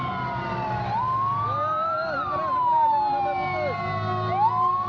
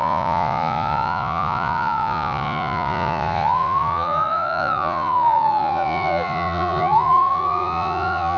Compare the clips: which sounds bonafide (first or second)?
first